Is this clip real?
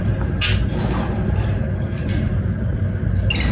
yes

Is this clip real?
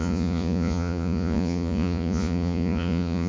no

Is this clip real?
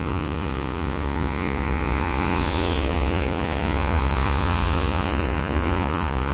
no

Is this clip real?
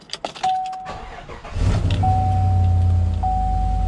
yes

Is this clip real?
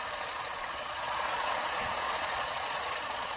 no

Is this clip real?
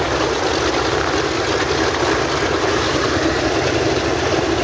yes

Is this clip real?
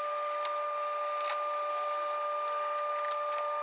yes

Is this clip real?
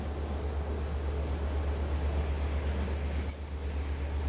yes